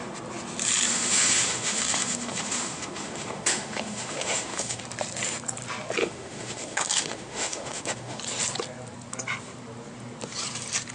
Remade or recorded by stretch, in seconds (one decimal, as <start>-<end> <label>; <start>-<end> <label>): 0.0-0.9 recorded; 0.9-4.8 remade; 4.8-6.0 recorded; 6.0-8.2 remade; 8.2-10.9 recorded